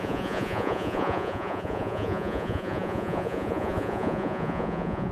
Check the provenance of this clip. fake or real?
fake